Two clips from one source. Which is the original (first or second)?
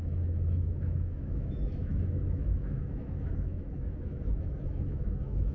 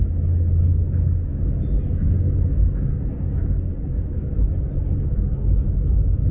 second